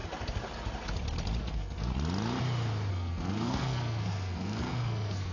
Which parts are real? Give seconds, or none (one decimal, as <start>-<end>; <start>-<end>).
0.0-1.4; 1.9-2.9